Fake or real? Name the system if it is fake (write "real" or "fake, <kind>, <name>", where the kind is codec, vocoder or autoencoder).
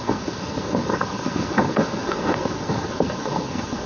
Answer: fake, codec, SNAC